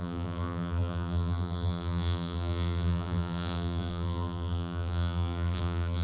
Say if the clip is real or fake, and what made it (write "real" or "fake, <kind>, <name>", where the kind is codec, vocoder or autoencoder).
fake, vocoder, BigVGAN v2